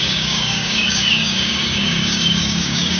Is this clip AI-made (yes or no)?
yes